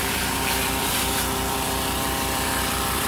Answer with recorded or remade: remade